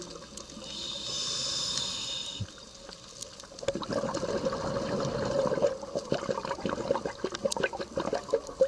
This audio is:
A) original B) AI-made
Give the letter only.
A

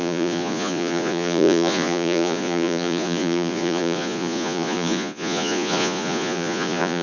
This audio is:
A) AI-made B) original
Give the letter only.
A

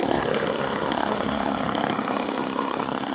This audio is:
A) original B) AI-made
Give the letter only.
B